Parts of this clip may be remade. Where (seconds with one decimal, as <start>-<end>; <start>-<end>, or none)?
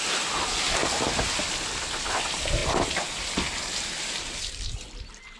0.0-0.8; 2.1-2.6; 3.7-5.4